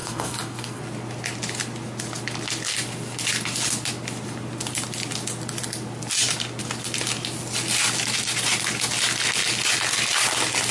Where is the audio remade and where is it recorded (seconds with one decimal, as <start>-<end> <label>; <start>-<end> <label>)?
0.0-0.8 remade; 0.8-10.7 recorded